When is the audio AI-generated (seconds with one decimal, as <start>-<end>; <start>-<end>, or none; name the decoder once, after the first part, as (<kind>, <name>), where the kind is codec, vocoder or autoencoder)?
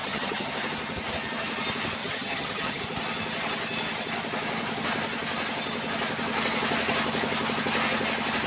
0.0-0.5 (vocoder, HiFi-GAN); 2.0-2.8